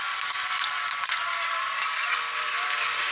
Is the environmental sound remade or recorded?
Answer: recorded